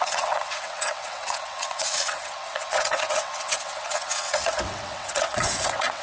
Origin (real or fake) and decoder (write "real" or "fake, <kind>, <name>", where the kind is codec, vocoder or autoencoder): fake, vocoder, WaveNeXt